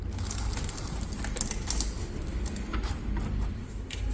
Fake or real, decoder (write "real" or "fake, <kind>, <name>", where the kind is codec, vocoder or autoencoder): real